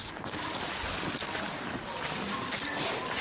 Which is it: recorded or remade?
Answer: recorded